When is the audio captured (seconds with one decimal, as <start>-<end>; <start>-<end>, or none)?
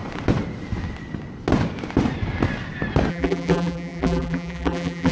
0.0-3.1